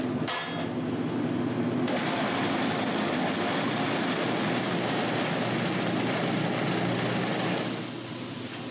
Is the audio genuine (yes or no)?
yes